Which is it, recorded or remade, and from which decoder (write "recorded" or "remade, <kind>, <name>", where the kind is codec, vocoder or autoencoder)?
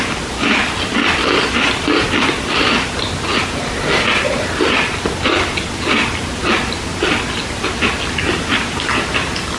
recorded